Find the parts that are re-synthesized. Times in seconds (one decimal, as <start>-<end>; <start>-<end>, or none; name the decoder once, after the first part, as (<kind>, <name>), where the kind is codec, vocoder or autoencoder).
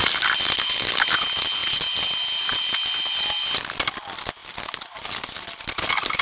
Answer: none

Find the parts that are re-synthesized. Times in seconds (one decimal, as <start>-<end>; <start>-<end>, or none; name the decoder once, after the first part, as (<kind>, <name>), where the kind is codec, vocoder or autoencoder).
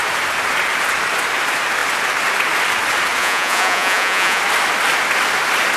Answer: 3.2-4.4 (vocoder, Vocos)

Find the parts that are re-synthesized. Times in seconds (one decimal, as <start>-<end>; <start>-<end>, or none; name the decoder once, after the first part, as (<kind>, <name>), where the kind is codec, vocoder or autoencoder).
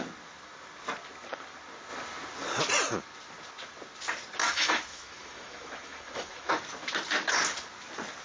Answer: 4.4-6.6 (autoencoder, DAC-VAE)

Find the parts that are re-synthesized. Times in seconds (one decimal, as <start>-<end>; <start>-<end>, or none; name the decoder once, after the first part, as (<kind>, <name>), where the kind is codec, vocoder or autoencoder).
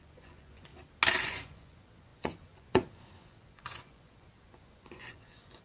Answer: 0.0-0.7 (vocoder, Vocos); 1.2-5.6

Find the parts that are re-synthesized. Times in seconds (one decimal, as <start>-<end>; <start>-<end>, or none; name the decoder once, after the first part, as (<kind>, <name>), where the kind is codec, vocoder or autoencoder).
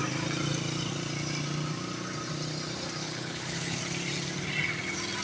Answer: 3.0-3.8 (codec, HILCodec)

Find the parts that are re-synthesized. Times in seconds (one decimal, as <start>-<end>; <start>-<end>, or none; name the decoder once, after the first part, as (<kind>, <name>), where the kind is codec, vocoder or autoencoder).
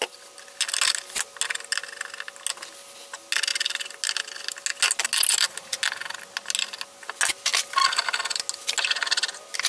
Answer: none